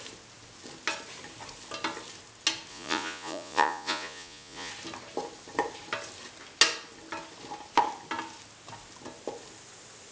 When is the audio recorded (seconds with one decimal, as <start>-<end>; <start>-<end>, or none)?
0.0-2.7; 4.7-10.1